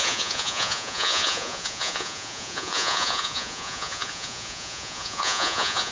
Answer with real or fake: fake